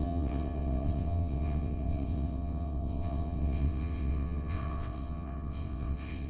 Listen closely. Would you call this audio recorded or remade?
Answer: remade